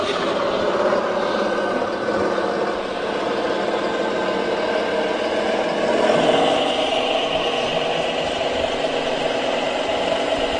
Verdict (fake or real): real